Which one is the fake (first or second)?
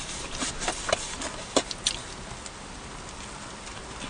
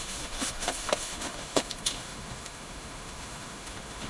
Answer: second